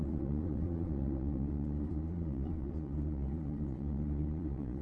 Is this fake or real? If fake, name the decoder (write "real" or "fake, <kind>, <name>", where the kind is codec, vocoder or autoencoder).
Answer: fake, vocoder, Vocos